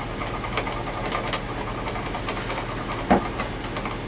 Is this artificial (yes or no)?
no